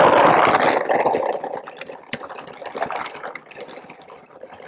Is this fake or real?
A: fake